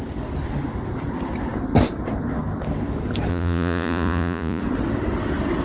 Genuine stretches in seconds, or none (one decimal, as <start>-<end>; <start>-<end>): 0.0-3.3; 4.6-5.6